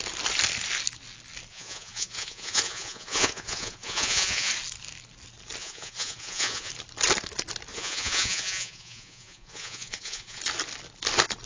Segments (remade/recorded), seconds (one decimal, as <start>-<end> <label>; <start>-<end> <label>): 0.0-1.5 recorded; 1.5-4.5 remade; 4.5-5.6 recorded; 5.6-6.7 remade; 6.7-7.7 recorded; 7.7-10.4 remade; 10.4-11.5 recorded